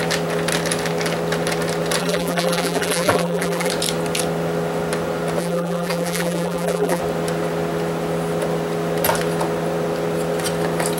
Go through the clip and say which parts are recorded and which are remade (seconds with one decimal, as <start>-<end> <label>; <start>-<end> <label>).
0.0-2.0 recorded; 2.0-3.7 remade; 3.7-5.4 recorded; 5.4-7.0 remade; 7.0-11.0 recorded